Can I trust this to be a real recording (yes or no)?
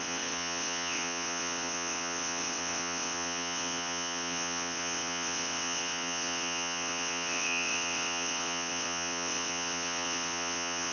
no